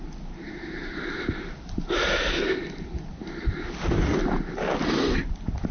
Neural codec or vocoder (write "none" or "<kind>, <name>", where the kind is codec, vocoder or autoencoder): none